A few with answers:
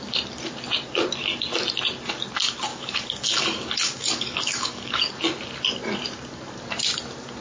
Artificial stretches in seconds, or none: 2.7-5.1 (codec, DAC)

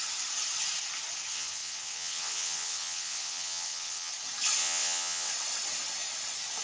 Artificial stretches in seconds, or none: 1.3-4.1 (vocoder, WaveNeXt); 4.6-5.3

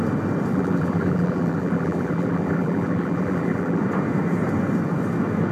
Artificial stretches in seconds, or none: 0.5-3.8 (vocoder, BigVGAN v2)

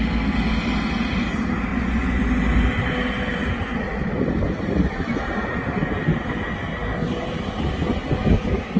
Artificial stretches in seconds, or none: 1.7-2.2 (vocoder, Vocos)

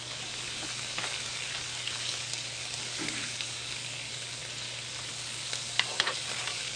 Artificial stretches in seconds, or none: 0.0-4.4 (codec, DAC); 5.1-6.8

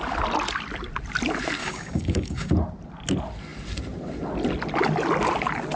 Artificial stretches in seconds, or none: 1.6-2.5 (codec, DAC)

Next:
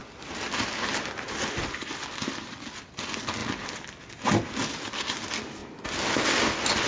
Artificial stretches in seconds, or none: none